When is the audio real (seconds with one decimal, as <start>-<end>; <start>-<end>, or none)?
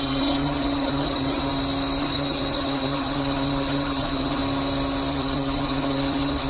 1.5-2.0; 4.4-5.1